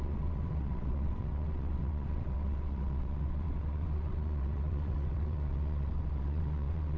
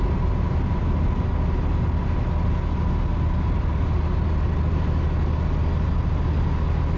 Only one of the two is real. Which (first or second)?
second